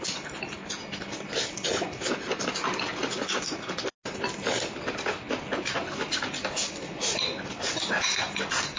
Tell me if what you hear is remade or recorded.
recorded